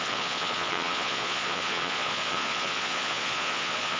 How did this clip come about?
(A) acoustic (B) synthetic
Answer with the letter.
B